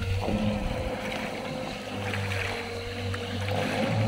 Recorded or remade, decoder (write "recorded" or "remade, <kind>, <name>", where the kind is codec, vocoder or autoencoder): recorded